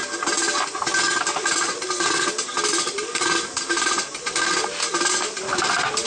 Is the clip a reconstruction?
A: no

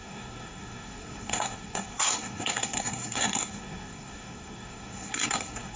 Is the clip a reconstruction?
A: yes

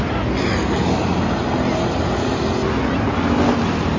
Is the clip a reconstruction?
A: no